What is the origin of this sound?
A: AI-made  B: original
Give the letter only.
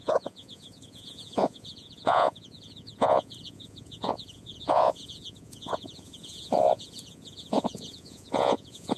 A